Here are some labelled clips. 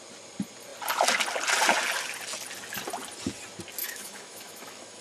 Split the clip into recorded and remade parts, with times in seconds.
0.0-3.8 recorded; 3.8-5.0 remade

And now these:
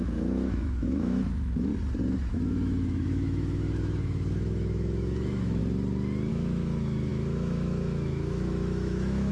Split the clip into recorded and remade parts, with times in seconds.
0.0-1.7 remade; 1.7-2.3 recorded; 2.3-5.6 remade; 5.6-6.3 recorded; 6.3-9.3 remade